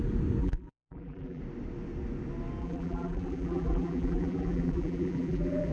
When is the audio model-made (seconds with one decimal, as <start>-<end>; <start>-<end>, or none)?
0.4-1.4; 2.6-5.7